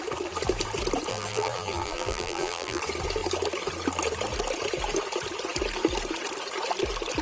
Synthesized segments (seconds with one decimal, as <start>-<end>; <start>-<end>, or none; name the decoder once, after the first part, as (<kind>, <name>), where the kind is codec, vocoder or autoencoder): 1.1-2.8 (vocoder, BigVGAN v2)